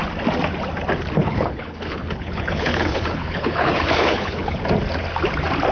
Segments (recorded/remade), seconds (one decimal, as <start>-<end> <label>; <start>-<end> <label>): 0.0-1.2 recorded; 1.2-4.6 remade; 4.6-5.7 recorded